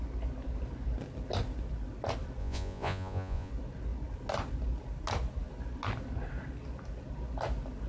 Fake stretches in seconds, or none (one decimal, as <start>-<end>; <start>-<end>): 2.4-3.5